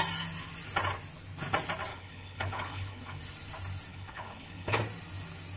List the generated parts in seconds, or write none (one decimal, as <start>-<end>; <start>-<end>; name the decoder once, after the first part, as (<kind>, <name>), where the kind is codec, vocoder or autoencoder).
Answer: 1.9-3.2 (codec, HILCodec); 3.9-4.8